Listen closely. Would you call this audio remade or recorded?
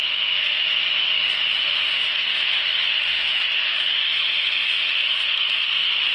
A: remade